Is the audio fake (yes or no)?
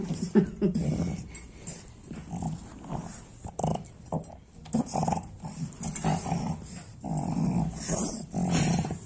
no